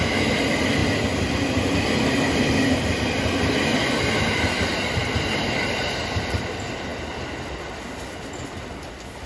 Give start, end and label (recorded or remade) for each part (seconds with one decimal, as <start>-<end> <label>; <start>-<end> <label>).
0.0-9.3 recorded